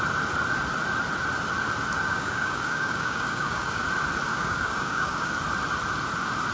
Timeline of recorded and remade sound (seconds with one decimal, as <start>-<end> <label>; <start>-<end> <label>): 0.0-2.1 recorded; 2.1-3.8 remade; 3.8-4.3 recorded; 4.3-5.3 remade; 5.3-6.5 recorded